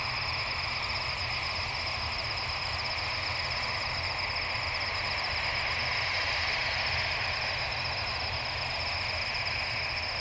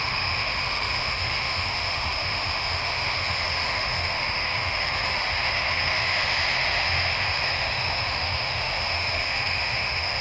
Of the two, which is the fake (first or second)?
second